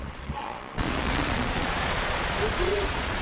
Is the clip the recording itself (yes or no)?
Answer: no